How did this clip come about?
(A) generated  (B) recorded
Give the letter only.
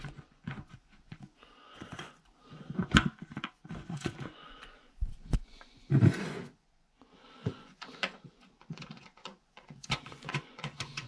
A